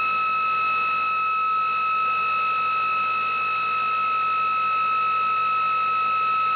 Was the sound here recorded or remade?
recorded